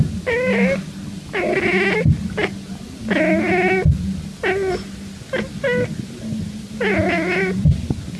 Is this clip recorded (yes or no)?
yes